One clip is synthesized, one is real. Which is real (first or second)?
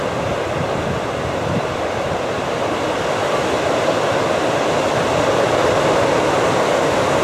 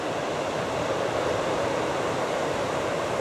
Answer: first